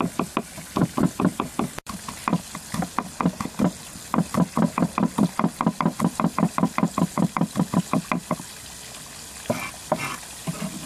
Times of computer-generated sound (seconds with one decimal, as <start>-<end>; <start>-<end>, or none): 0.8-2.2